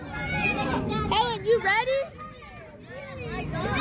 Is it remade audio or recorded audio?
recorded